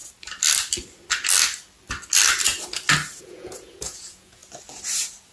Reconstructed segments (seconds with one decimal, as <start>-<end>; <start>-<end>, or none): 3.2-4.4